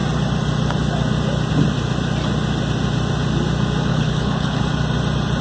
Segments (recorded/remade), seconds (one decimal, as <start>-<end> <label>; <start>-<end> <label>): 0.0-3.9 recorded; 3.9-4.6 remade; 4.6-5.4 recorded